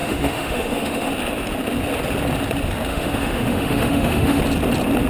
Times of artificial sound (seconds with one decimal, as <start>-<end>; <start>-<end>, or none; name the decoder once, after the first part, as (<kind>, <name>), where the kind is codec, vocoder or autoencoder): 0.0-1.1 (autoencoder, DAC-VAE); 2.9-4.4